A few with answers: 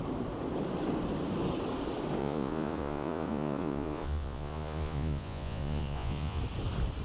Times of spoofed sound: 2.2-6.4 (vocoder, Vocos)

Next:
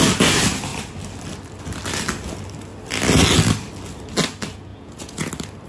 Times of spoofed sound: 4.7-5.3 (vocoder, Vocos)

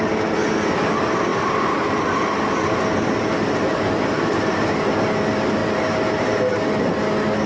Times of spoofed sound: none